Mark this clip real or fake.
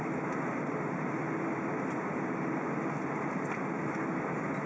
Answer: real